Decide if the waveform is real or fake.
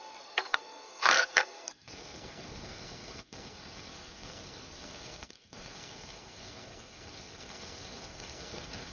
fake